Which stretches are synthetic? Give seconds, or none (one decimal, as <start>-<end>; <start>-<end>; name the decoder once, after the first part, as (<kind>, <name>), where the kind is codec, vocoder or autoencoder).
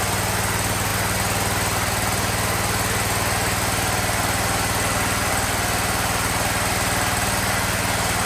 none